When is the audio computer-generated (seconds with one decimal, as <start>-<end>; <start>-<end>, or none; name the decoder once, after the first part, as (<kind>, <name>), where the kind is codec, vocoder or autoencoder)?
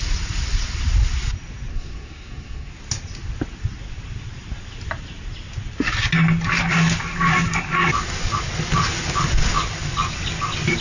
1.7-2.7 (codec, SNAC)